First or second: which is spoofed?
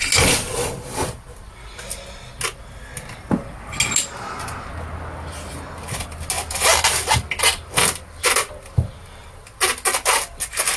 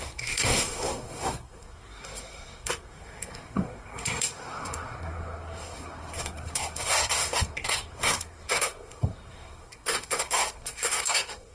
second